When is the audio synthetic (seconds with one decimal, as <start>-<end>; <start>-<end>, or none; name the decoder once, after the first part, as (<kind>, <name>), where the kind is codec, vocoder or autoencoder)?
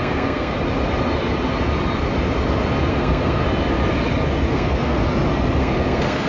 0.0-0.5 (codec, SNAC); 2.9-3.4; 4.5-5.0; 5.6-6.3